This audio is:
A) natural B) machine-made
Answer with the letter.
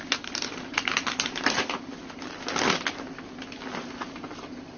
A